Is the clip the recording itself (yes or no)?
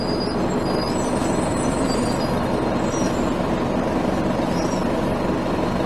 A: yes